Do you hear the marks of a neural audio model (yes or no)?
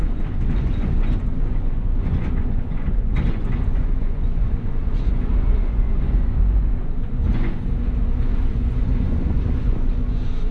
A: yes